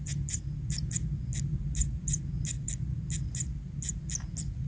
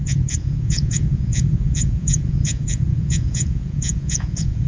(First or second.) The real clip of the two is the first